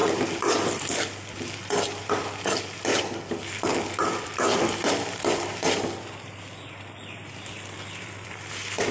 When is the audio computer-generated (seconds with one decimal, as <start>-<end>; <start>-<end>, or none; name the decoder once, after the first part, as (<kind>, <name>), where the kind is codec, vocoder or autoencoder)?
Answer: 0.0-2.1 (vocoder, BigVGAN v2); 2.9-3.5; 4.0-8.9